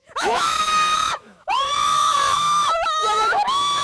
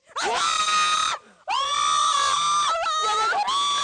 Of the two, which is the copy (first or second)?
first